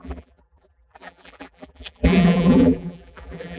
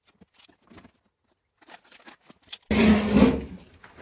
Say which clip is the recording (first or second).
second